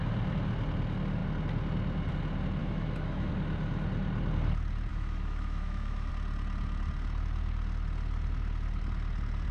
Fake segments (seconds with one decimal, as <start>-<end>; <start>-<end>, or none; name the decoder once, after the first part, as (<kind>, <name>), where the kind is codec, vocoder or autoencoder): 2.6-3.3 (autoencoder, DAC-VAE); 4.9-6.1